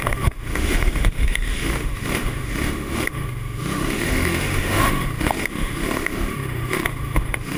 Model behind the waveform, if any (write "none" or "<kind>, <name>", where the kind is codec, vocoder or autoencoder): autoencoder, DAC-VAE